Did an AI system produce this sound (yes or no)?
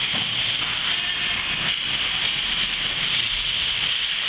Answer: no